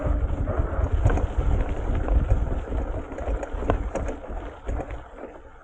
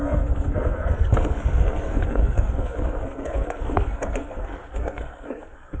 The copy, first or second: second